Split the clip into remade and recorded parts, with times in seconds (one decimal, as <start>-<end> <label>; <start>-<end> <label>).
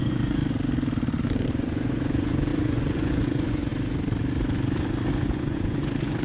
0.0-0.4 remade; 0.4-1.5 recorded; 1.5-3.7 remade; 3.7-5.1 recorded; 5.1-6.2 remade